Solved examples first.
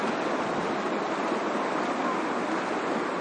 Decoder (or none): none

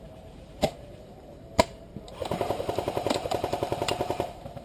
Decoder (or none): vocoder, BigVGAN v2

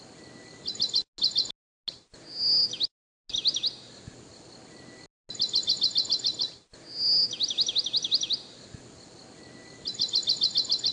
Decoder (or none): none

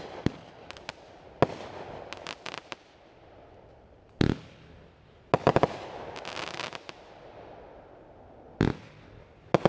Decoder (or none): none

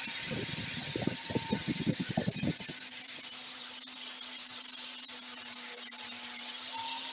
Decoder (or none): vocoder, BigVGAN v2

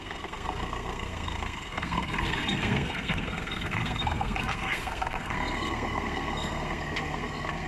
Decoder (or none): codec, SNAC